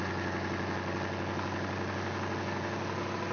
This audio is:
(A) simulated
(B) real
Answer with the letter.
B